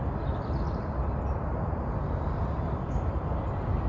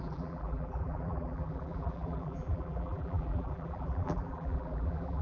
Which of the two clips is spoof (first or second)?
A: second